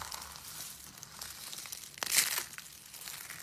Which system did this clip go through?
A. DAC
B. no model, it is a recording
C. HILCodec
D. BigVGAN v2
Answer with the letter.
B